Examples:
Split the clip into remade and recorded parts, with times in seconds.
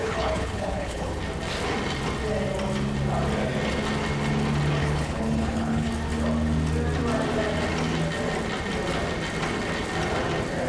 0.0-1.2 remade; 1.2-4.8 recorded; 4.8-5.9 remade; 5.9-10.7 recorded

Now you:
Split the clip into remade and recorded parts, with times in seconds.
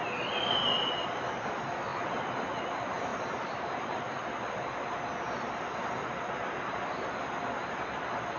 0.0-8.4 recorded